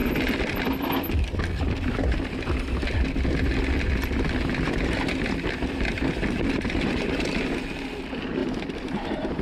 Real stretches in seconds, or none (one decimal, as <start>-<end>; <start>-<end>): 2.0-8.4